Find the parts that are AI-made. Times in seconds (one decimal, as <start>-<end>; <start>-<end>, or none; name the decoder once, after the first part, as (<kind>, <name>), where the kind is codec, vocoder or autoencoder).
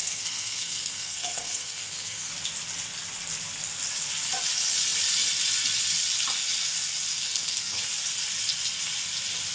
0.0-2.3 (codec, SNAC); 7.1-7.8